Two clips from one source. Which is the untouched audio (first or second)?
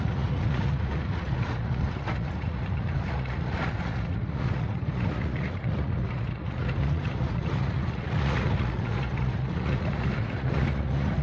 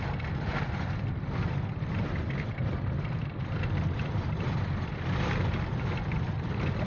second